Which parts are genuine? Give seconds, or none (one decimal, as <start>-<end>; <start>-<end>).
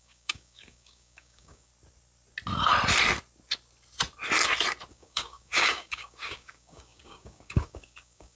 1.7-4.9